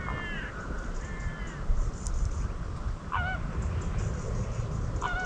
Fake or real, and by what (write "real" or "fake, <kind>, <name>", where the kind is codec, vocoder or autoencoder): real